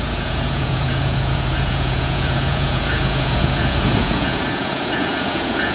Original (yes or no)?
no